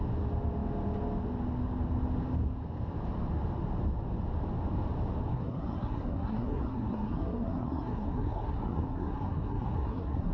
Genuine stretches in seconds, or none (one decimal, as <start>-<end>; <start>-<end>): 0.0-5.3